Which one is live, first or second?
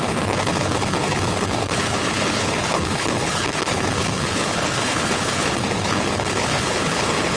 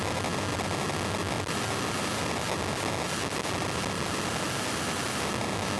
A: second